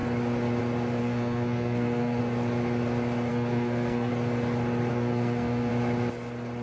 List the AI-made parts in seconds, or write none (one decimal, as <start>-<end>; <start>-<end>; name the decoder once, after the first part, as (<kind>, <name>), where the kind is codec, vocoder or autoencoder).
1.0-2.2 (codec, SNAC); 3.3-4.1; 4.9-5.7